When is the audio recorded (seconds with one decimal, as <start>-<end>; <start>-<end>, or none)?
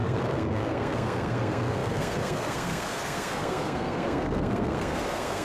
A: none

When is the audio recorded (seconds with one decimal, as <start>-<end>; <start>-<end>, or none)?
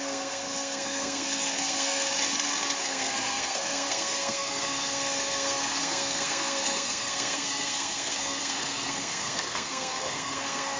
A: 2.1-2.8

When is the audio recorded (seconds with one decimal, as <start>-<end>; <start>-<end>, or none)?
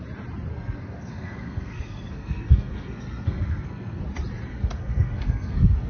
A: 0.0-0.5; 4.0-4.5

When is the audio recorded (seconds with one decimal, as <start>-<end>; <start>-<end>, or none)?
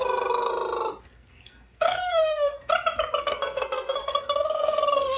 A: 0.5-1.0; 2.7-3.2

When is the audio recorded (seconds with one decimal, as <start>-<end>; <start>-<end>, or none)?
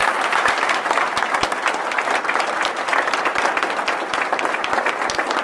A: 0.0-5.4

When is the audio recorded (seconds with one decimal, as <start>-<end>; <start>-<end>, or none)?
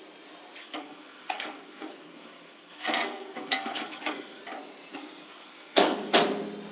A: 0.0-0.6; 4.4-4.9; 6.1-6.7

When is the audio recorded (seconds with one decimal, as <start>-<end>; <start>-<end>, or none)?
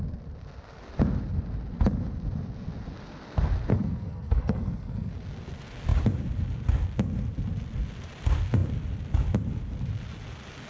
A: 0.0-3.7; 5.1-10.7